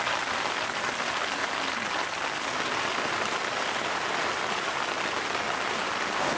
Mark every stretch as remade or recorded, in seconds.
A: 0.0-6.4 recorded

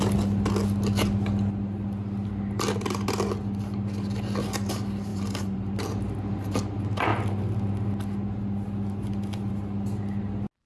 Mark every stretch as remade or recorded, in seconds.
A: 0.0-5.1 recorded; 5.1-5.7 remade; 5.7-10.7 recorded